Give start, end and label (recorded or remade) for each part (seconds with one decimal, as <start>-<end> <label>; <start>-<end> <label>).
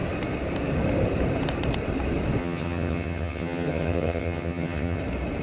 0.0-2.4 recorded; 2.4-5.0 remade; 5.0-5.4 recorded